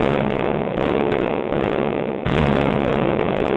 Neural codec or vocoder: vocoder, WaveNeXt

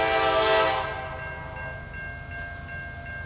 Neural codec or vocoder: none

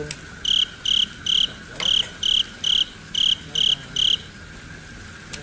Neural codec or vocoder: none